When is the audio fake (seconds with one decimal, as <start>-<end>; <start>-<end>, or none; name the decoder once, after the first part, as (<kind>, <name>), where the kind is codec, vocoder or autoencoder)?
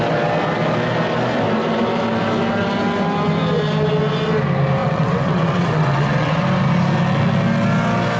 4.8-6.4 (vocoder, WaveNeXt)